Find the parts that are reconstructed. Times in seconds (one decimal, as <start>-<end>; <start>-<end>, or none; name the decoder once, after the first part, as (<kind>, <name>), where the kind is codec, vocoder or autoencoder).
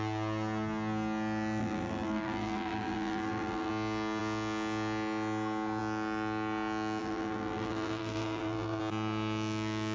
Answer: 1.6-3.7 (vocoder, BigVGAN v2); 7.0-8.8